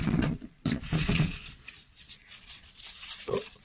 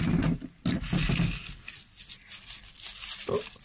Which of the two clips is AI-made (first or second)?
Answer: first